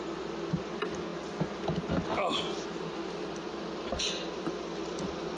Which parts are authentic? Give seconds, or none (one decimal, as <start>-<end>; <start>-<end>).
0.0-5.4